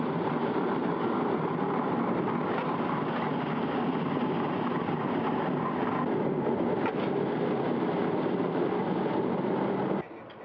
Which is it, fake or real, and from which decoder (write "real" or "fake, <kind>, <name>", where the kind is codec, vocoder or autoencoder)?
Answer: real